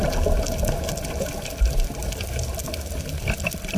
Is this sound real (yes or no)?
yes